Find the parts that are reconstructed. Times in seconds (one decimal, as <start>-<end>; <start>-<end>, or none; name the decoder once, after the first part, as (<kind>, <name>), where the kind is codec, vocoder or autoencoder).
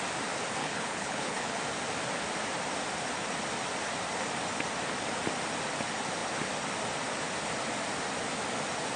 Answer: 0.6-1.6 (codec, HILCodec)